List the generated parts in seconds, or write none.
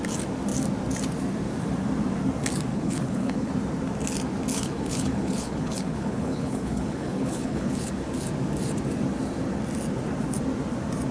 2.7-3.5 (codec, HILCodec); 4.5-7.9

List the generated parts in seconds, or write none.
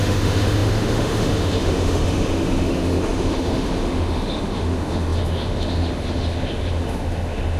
0.0-7.6 (autoencoder, DAC-VAE)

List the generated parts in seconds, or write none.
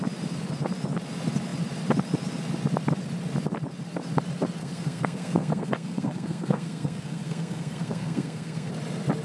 4.6-8.7 (codec, SNAC)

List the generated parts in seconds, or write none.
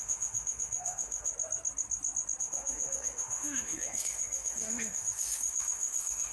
0.0-1.3 (autoencoder, DAC-VAE); 2.4-6.3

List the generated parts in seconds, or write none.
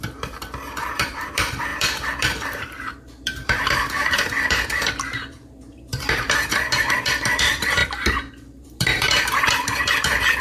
0.0-7.8 (vocoder, BigVGAN v2); 8.3-10.4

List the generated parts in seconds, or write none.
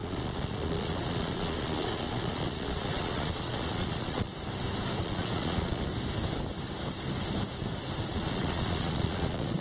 0.0-4.3 (vocoder, Vocos); 5.0-5.9; 8.1-9.6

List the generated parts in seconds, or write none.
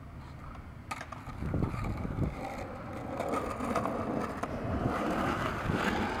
1.3-2.4 (codec, DAC); 4.8-5.8